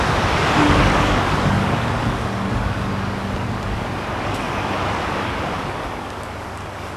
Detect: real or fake fake